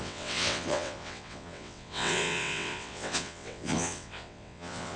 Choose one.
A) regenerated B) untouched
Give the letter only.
A